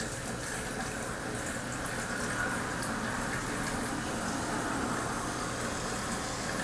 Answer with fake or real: real